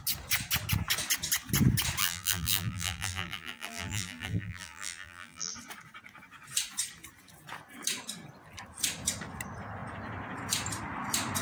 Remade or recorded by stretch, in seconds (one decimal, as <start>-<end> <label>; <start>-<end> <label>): 0.0-2.0 recorded; 2.0-5.5 remade; 5.5-11.4 recorded